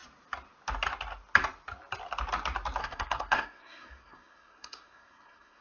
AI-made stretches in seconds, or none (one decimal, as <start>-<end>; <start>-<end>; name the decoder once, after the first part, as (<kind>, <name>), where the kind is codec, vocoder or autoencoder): 2.8-5.6 (codec, SNAC)